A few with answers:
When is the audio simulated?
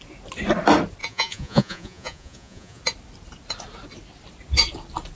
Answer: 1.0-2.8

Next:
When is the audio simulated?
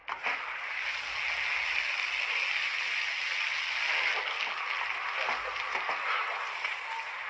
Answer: none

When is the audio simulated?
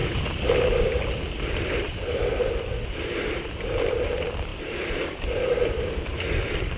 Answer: 0.0-2.2; 3.7-4.5